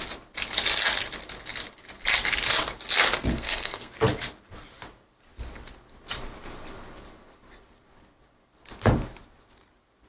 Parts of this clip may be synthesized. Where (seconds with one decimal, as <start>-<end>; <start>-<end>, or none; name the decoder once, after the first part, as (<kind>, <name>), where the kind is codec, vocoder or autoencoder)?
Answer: 3.3-3.9 (codec, SNAC)